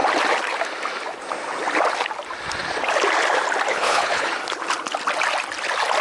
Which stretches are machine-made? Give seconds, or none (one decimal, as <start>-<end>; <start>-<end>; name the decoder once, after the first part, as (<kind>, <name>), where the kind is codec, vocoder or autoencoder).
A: 3.7-4.3 (codec, HILCodec)